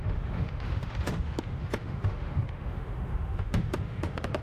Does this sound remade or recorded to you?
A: remade